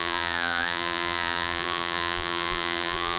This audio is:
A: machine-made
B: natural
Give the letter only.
A